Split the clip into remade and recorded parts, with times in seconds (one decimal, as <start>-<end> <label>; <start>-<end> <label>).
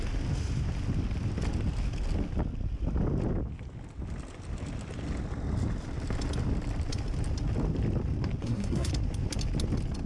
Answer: 0.0-8.4 recorded; 8.4-8.9 remade; 8.9-10.1 recorded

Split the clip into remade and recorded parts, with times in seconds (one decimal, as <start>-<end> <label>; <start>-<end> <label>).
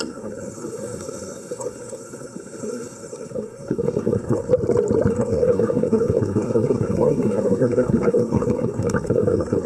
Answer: 0.0-4.5 remade; 4.5-5.1 recorded; 5.1-9.7 remade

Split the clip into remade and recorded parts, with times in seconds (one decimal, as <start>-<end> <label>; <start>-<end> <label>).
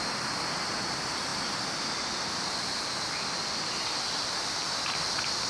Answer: 0.0-5.5 recorded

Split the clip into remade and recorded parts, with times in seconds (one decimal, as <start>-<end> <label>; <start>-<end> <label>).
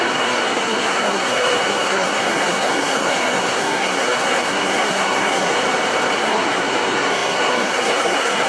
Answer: 0.0-5.6 remade; 5.6-6.2 recorded; 6.2-8.5 remade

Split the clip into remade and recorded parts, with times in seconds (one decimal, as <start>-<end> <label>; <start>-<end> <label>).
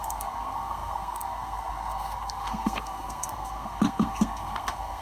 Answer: 0.0-5.0 remade